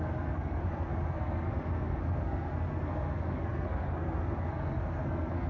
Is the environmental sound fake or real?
fake